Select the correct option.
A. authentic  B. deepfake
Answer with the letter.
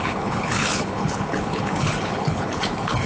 B